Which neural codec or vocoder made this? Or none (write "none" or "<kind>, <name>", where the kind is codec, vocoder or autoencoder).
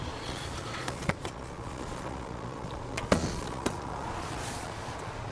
vocoder, Vocos